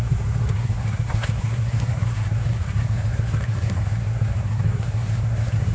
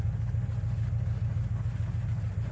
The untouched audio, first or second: second